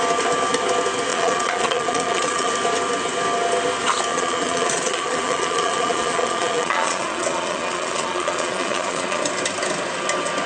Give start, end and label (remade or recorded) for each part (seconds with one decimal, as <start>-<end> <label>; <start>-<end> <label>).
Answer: 0.0-1.1 recorded; 1.1-2.5 remade; 2.5-4.1 recorded; 4.1-9.2 remade; 9.2-10.5 recorded